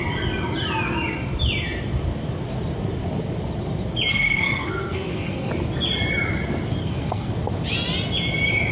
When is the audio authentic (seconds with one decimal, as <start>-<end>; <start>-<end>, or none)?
0.0-4.1; 5.5-6.8; 7.3-8.7